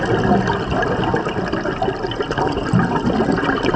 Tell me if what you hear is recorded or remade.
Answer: recorded